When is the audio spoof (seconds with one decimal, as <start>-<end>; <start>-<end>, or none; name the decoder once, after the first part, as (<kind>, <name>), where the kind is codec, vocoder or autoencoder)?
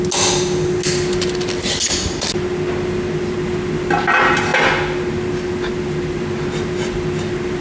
none